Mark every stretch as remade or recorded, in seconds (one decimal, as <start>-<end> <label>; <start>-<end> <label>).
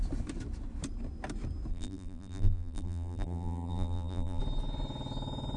0.0-1.7 recorded; 1.7-4.4 remade; 4.4-5.6 recorded